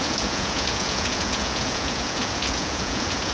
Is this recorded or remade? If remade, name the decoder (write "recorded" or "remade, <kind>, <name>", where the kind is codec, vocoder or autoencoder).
remade, vocoder, Vocos